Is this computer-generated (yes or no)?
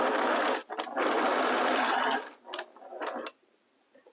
no